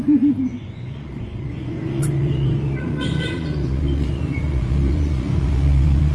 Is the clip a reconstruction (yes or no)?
yes